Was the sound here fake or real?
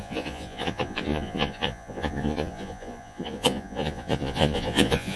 fake